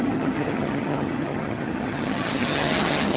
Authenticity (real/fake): fake